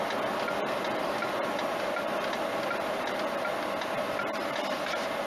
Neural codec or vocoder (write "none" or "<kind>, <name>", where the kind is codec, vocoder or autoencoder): none